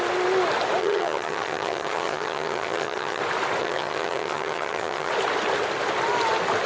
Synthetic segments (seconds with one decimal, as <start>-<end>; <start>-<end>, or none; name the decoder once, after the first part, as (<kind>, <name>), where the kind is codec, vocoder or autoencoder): 0.8-3.2 (vocoder, HiFi-GAN); 3.6-5.1